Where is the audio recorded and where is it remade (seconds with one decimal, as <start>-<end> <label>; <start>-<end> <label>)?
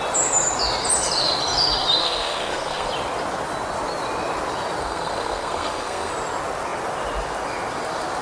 0.0-2.0 recorded; 2.0-2.9 remade; 2.9-4.8 recorded; 4.8-6.1 remade; 6.1-8.2 recorded